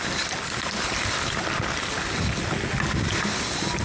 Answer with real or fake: real